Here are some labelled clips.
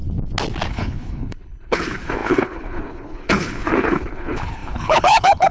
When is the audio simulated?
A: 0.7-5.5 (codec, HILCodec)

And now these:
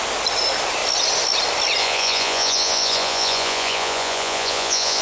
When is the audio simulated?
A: 1.8-5.0 (vocoder, Vocos)

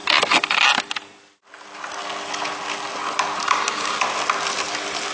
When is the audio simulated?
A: 3.4-4.0 (codec, DAC)